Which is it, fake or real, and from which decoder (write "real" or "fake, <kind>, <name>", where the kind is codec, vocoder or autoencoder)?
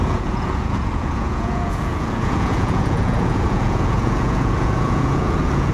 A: fake, vocoder, Vocos